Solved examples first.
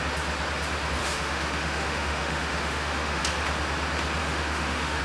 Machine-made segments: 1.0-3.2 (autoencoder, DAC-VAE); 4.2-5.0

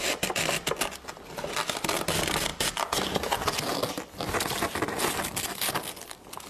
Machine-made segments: none

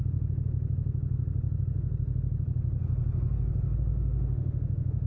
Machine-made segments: 3.9-5.1 (autoencoder, DAC-VAE)